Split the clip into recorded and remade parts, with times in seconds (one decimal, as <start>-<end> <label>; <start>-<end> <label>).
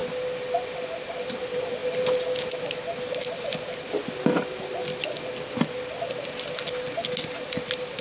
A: 0.0-8.0 recorded